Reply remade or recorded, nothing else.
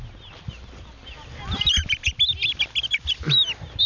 recorded